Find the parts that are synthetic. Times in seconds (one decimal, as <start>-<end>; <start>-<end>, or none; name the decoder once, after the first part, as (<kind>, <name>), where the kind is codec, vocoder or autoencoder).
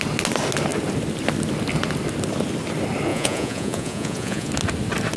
3.1-4.5 (vocoder, Vocos)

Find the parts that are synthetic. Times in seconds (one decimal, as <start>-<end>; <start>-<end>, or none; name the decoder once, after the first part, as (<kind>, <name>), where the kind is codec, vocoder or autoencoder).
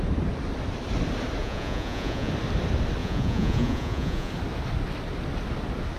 1.4-2.3 (vocoder, Vocos); 3.0-4.3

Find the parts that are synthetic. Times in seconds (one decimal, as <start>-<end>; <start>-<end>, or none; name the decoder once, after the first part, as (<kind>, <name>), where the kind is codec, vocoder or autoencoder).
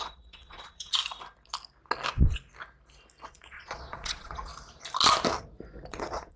0.0-1.0 (vocoder, Vocos); 3.3-4.5; 5.9-6.4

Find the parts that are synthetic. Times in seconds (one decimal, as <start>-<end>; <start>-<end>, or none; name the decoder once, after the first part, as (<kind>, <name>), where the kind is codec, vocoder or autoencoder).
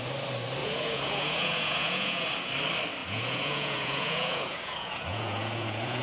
0.6-2.5 (vocoder, Vocos); 3.0-6.0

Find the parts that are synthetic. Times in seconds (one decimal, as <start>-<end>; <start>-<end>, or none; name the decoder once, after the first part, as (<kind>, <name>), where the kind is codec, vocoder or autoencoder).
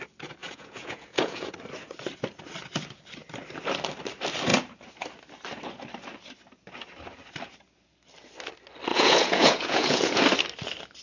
0.4-1.5 (vocoder, Vocos); 8.9-10.2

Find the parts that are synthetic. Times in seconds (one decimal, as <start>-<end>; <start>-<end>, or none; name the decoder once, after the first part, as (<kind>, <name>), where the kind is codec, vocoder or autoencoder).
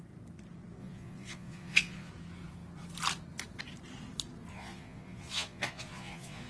0.8-2.1 (vocoder, Vocos); 4.5-6.5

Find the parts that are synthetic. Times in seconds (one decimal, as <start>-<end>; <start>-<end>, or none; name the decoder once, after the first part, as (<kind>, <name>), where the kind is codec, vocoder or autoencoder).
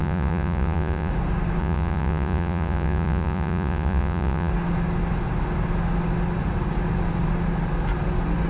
0.0-1.1 (vocoder, Vocos); 1.6-4.5